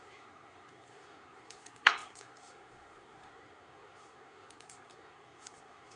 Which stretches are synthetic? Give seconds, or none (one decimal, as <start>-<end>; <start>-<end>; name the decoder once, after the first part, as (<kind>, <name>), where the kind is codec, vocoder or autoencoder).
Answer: 0.0-6.0 (codec, SNAC)